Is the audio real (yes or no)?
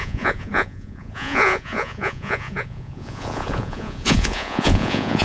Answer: no